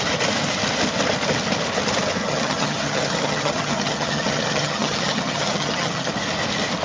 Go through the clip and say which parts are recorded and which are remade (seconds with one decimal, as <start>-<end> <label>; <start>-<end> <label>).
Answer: 0.0-2.2 recorded; 2.2-6.1 remade; 6.1-6.8 recorded